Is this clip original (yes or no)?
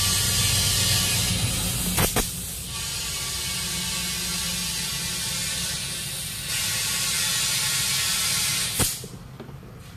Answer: yes